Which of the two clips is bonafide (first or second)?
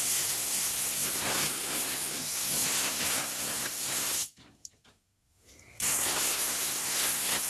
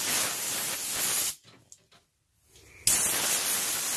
second